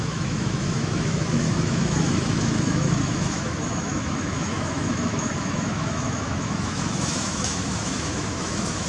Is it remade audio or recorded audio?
remade